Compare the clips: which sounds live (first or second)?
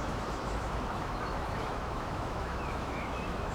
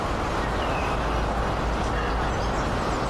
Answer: second